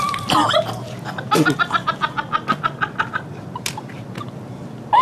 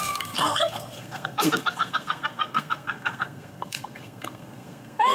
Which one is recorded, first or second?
first